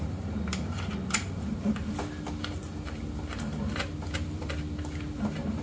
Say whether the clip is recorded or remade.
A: recorded